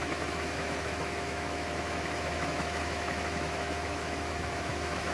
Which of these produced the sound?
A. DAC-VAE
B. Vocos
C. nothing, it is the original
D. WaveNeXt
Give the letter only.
A